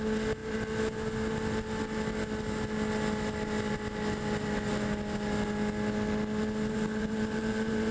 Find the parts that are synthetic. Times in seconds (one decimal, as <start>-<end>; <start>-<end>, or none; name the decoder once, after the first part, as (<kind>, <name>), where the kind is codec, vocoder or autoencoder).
6.4-7.9 (vocoder, BigVGAN v2)

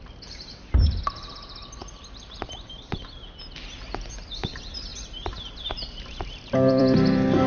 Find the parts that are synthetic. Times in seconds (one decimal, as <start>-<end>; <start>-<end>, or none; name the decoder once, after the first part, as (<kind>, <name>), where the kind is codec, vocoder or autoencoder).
0.0-1.8 (vocoder, BigVGAN v2); 2.7-3.2; 4.2-4.9; 5.6-7.5

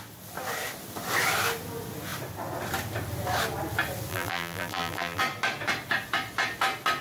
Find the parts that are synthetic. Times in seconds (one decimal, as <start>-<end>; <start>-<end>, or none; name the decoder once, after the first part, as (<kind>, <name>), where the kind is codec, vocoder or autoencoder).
4.1-5.2 (vocoder, BigVGAN v2)

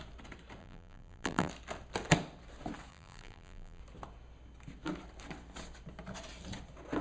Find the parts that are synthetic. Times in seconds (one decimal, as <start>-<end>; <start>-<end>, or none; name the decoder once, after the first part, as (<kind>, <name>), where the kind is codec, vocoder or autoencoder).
0.6-1.5 (vocoder, BigVGAN v2); 2.9-3.8

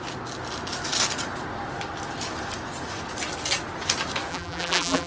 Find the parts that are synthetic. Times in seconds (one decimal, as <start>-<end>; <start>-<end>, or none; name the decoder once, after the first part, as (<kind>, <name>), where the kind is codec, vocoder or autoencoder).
4.3-5.1 (vocoder, BigVGAN v2)

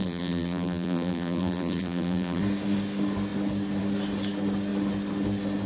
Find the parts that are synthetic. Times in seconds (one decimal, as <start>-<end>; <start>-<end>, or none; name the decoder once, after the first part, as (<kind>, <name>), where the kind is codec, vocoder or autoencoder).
0.0-2.4 (vocoder, BigVGAN v2)

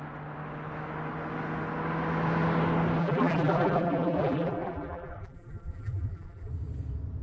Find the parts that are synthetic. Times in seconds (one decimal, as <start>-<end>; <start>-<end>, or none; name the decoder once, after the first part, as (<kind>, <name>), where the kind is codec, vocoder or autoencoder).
3.0-6.5 (vocoder, BigVGAN v2)

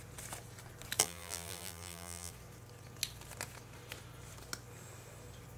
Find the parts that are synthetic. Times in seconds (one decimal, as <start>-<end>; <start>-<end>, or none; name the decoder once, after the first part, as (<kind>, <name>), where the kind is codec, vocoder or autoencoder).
1.0-2.3 (vocoder, BigVGAN v2)